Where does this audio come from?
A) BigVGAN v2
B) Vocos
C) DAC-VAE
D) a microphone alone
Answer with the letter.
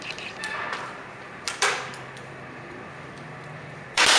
A